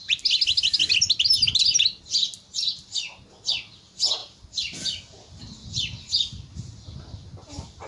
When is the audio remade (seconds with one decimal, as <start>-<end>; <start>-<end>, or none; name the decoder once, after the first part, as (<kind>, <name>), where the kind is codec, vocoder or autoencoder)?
none